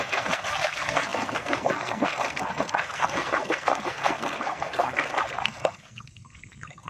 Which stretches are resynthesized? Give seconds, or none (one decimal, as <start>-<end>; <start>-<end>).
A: 0.0-6.9